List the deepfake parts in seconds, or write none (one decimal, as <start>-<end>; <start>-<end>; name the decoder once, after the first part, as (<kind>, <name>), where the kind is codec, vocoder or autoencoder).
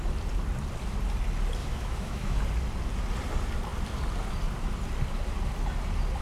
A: 1.6-2.4 (autoencoder, DAC-VAE)